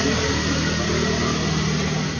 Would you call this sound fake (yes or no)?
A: no